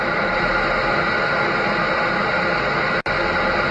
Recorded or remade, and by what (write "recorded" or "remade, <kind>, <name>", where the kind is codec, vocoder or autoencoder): recorded